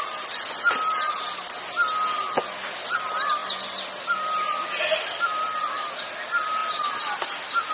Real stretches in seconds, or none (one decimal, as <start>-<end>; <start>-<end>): 0.0-7.7